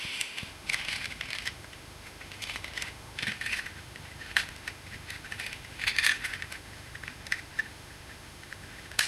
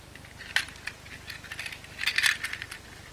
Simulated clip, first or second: first